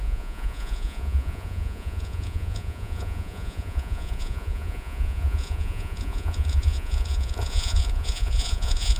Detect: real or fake fake